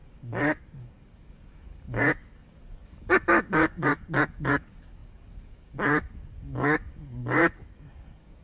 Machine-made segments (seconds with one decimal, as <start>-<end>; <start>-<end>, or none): 0.0-8.4